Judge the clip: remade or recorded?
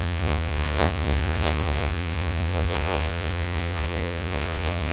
remade